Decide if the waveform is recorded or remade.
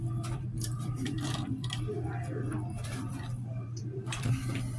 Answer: remade